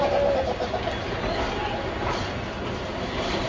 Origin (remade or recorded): recorded